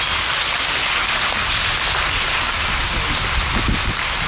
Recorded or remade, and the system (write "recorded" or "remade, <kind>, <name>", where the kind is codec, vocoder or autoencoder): recorded